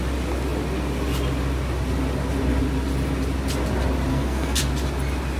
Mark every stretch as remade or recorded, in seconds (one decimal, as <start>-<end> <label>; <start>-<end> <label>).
0.0-4.1 recorded; 4.1-4.6 remade; 4.6-5.4 recorded